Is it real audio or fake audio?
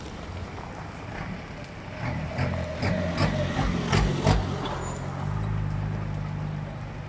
real